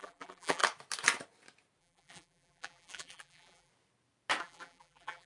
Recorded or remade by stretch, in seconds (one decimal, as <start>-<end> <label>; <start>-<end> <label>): 0.0-0.6 remade; 0.6-1.8 recorded; 1.8-3.7 remade; 3.7-4.4 recorded; 4.4-5.3 remade